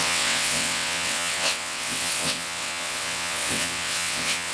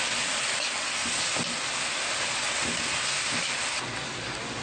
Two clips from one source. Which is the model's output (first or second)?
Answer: first